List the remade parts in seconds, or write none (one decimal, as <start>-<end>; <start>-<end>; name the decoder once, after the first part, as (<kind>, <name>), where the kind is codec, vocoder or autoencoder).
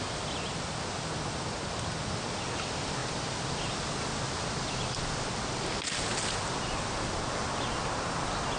none